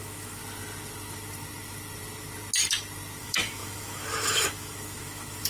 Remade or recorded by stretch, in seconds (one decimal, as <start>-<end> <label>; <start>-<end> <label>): 0.0-0.4 remade; 0.4-3.2 recorded; 3.2-5.5 remade